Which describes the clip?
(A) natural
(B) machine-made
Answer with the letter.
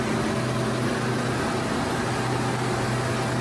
A